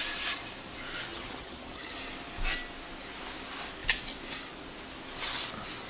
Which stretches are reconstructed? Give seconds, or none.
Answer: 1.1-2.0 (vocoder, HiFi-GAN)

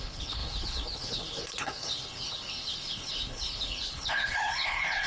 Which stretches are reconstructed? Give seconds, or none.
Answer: 0.0-5.1 (codec, HILCodec)

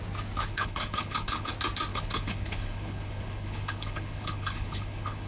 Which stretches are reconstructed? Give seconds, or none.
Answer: 0.5-1.5 (codec, HILCodec); 1.9-5.3

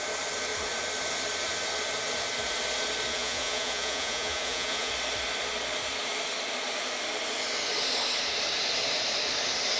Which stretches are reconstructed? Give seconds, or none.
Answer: 3.1-4.9 (vocoder, Vocos)

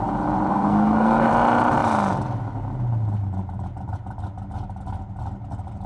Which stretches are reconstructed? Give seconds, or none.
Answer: 0.5-1.3 (codec, SNAC)